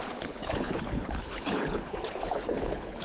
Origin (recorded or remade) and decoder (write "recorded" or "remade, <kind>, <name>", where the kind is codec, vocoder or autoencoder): remade, codec, HILCodec